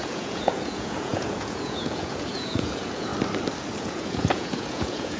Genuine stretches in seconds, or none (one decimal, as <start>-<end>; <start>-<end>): 3.1-3.8